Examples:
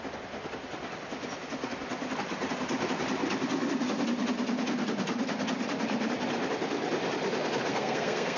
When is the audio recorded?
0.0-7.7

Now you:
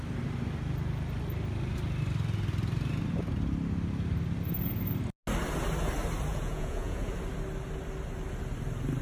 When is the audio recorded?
0.0-6.3; 7.1-9.0

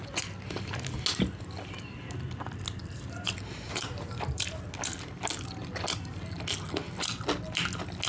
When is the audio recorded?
0.0-2.8; 4.6-8.1

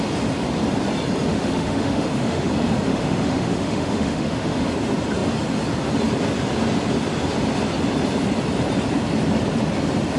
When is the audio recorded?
0.0-1.3; 2.5-2.9; 4.7-10.2